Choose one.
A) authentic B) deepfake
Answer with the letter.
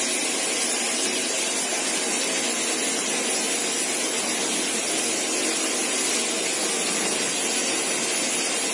A